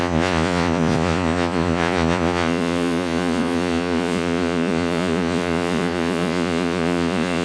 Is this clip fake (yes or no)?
yes